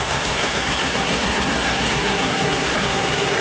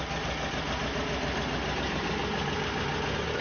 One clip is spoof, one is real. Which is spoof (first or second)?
first